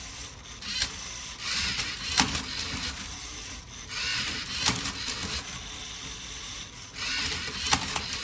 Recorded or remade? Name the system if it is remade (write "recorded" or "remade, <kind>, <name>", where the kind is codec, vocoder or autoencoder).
recorded